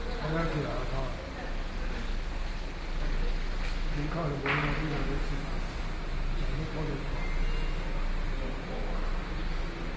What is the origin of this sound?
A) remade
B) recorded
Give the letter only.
B